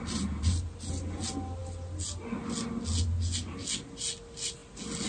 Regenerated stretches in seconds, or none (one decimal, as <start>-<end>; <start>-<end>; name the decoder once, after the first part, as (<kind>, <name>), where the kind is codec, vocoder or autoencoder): none